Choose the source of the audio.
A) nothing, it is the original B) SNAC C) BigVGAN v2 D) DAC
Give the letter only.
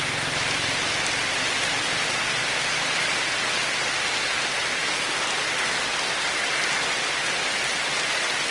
A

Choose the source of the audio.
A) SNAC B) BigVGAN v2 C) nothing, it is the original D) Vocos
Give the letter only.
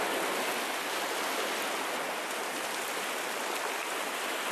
C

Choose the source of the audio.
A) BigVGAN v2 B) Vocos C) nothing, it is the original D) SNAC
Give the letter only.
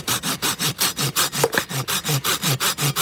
C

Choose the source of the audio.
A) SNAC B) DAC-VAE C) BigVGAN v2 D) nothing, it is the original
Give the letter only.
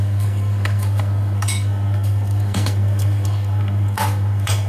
A